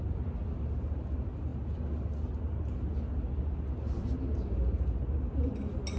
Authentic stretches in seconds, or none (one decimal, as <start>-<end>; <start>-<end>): 0.0-6.0